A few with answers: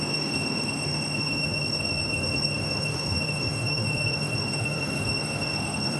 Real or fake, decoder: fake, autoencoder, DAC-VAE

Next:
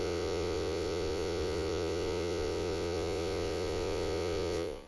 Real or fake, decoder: fake, vocoder, Vocos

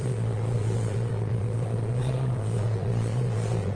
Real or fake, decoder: fake, vocoder, Vocos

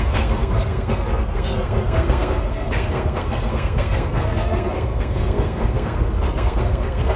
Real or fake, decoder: fake, codec, SNAC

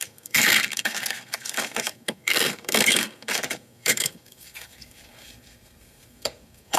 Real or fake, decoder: fake, codec, SNAC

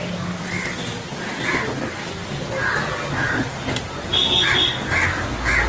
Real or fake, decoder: real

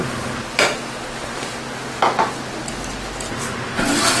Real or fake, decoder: real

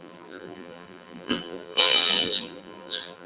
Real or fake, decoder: fake, vocoder, BigVGAN v2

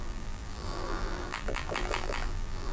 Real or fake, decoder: fake, vocoder, BigVGAN v2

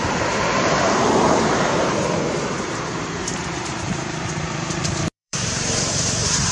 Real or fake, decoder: fake, vocoder, BigVGAN v2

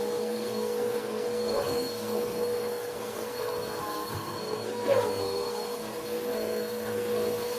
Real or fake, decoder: fake, codec, SNAC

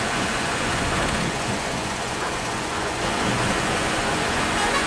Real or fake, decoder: fake, vocoder, Vocos